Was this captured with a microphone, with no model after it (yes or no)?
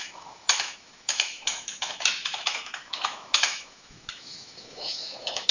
no